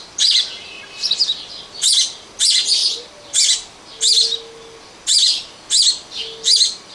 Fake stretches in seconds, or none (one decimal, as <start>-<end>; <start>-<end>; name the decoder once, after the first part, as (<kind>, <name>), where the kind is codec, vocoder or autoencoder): 0.0-2.8 (vocoder, BigVGAN v2); 5.9-6.9